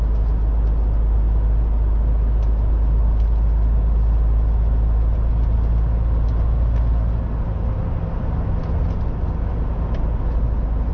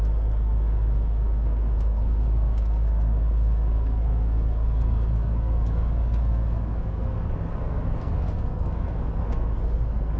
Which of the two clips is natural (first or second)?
first